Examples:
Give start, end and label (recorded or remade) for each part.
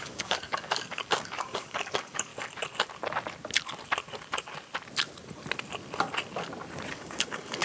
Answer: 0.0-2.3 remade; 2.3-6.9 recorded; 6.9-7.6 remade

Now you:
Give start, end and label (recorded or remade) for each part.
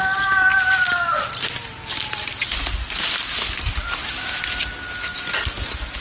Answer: 0.0-6.0 recorded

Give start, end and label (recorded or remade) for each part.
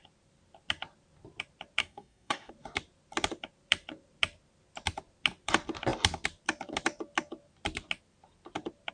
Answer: 0.0-1.8 recorded; 1.8-2.5 remade; 2.5-8.9 recorded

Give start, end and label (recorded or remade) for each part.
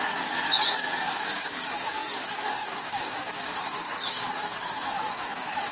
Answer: 0.0-5.7 remade